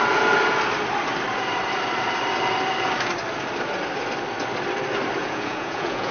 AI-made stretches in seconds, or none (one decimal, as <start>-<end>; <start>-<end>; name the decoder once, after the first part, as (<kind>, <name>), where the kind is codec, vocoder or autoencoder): 5.2-6.1 (vocoder, Vocos)